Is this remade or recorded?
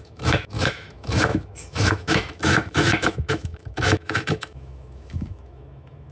remade